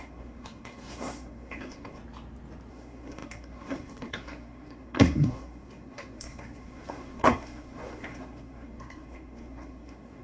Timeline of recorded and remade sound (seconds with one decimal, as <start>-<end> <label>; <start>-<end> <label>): 0.0-2.0 remade; 2.0-2.7 recorded; 2.7-10.2 remade